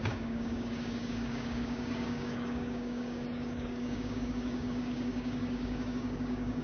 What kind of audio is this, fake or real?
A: fake